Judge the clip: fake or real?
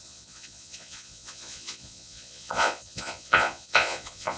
fake